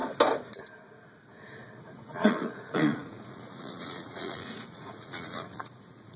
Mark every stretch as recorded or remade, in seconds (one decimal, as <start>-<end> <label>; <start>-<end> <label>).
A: 0.0-1.8 recorded; 1.8-6.2 remade